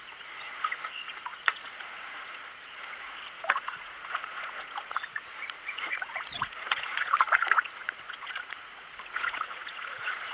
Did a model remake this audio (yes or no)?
yes